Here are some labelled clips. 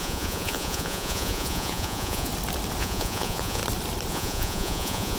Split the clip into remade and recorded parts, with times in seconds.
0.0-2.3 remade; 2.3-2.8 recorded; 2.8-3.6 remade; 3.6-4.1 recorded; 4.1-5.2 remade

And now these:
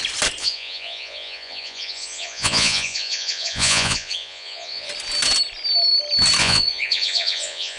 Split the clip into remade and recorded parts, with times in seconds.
0.0-0.4 recorded; 0.4-4.9 remade; 4.9-6.4 recorded; 6.4-7.8 remade

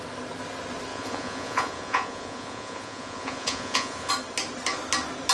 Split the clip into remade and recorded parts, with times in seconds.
0.0-0.9 recorded; 0.9-4.1 remade; 4.1-5.3 recorded